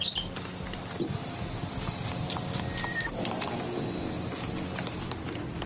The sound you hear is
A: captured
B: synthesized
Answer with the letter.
A